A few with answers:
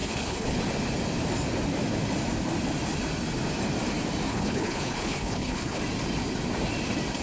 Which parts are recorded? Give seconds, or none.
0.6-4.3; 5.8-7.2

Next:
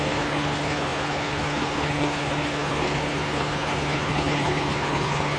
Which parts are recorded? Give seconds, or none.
none

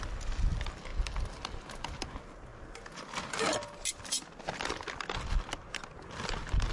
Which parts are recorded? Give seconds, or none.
0.0-6.7

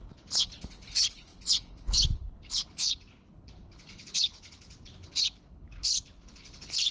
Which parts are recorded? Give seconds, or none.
none